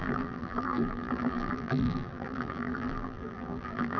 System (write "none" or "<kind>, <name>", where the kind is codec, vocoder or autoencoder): vocoder, BigVGAN v2